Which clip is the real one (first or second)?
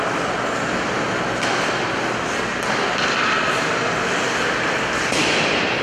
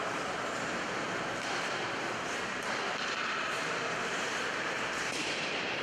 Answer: first